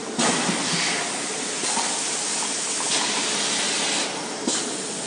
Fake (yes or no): no